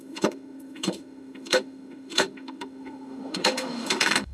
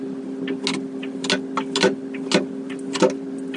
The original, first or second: second